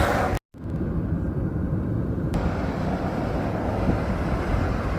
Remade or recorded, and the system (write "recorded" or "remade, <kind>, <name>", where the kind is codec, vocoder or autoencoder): recorded